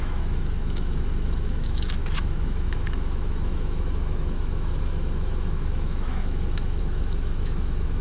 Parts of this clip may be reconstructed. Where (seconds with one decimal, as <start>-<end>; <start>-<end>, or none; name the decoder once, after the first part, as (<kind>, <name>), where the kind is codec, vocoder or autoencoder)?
0.0-8.0 (autoencoder, DAC-VAE)